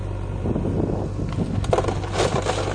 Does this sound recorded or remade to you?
recorded